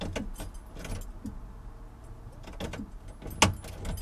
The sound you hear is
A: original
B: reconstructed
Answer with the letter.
A